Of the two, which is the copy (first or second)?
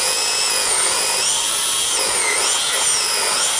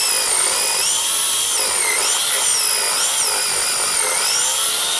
first